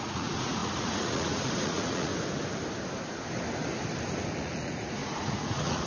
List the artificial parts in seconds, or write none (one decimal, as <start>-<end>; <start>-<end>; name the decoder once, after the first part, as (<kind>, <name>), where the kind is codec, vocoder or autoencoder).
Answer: 0.0-2.1 (vocoder, Vocos); 4.4-5.9